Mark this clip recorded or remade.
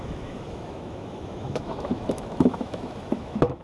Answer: remade